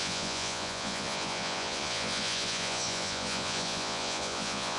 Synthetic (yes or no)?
yes